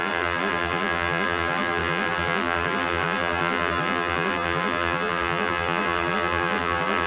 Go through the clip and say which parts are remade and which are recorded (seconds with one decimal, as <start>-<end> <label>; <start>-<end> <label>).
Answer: 0.0-7.1 remade